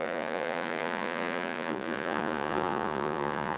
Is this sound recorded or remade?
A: remade